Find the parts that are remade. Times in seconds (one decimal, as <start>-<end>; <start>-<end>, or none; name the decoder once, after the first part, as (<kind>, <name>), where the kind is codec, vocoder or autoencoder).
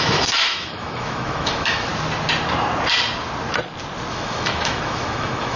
0.0-1.9 (autoencoder, DAC-VAE); 4.1-5.6